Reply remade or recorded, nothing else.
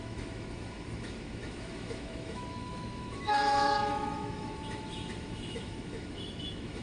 remade